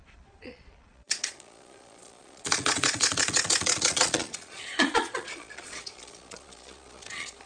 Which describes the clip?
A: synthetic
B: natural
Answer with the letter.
A